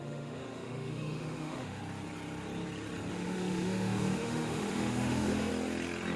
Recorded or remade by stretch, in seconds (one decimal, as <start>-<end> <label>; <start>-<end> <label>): 0.0-1.8 remade; 1.8-3.1 recorded; 3.1-5.5 remade; 5.5-6.2 recorded